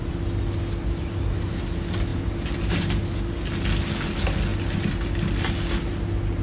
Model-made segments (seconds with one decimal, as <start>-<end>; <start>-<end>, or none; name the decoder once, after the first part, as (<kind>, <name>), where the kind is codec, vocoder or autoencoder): none